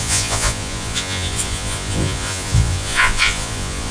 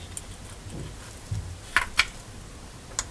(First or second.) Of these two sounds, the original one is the second